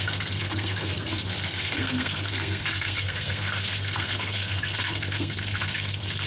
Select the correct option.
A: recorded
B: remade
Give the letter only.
B